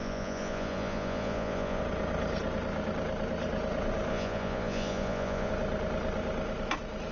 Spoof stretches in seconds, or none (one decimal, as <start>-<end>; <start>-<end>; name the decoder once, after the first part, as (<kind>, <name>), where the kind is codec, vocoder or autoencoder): 0.0-1.8 (vocoder, Vocos); 4.1-5.5